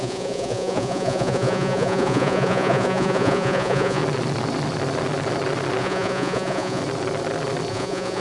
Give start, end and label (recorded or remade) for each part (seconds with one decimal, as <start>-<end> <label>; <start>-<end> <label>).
0.0-4.0 remade; 4.0-5.8 recorded; 5.8-6.8 remade; 6.8-7.7 recorded; 7.7-8.2 remade